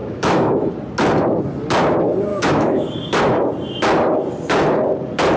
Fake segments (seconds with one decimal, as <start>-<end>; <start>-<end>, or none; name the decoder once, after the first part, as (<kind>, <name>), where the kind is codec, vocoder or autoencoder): 0.0-0.7 (autoencoder, DAC-VAE); 2.3-2.9